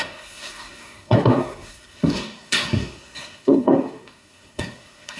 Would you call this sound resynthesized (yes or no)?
yes